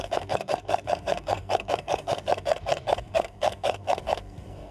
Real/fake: fake